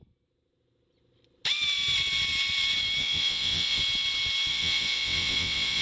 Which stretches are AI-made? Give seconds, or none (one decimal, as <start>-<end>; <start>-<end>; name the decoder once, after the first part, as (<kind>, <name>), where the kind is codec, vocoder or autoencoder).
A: 3.0-3.8 (vocoder, WaveNeXt); 4.5-5.8